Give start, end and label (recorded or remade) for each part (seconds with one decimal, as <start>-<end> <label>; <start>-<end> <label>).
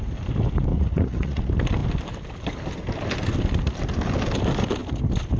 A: 0.0-0.7 recorded; 0.7-1.4 remade; 1.4-5.4 recorded